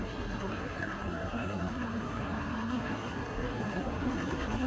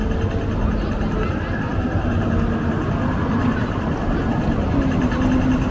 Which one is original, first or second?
second